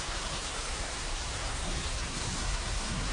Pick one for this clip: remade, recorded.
remade